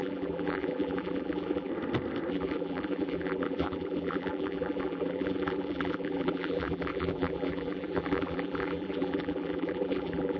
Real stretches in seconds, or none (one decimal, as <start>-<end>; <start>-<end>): 1.7-2.3